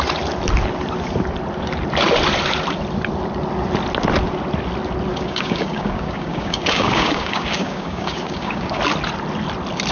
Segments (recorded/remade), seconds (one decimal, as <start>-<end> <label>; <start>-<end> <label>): 0.0-5.1 recorded; 5.1-8.8 remade; 8.8-9.9 recorded